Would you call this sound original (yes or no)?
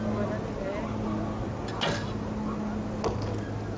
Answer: yes